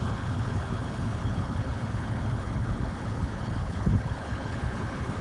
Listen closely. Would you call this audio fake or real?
fake